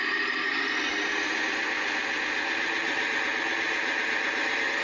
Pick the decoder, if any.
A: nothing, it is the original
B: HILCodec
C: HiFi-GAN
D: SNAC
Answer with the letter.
A